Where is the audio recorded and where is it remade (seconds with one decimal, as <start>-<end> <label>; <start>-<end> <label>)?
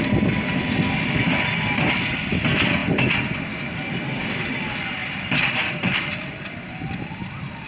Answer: 0.0-5.0 recorded; 5.0-7.0 remade; 7.0-7.7 recorded